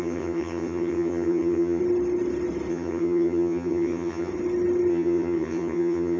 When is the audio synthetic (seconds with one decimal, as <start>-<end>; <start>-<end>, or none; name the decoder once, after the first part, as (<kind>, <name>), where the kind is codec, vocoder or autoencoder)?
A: 0.0-1.8 (vocoder, HiFi-GAN); 2.7-4.3; 4.9-6.2